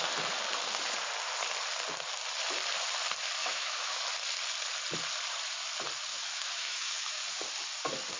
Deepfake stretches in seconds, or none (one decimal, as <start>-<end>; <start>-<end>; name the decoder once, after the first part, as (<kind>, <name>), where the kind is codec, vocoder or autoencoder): 3.4-4.0 (autoencoder, DAC-VAE); 6.1-7.2